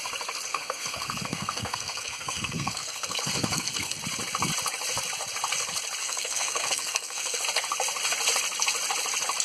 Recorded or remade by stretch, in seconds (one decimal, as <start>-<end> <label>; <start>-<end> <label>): 0.0-0.5 recorded; 0.5-4.0 remade; 4.0-6.0 recorded; 6.0-7.4 remade; 7.4-9.4 recorded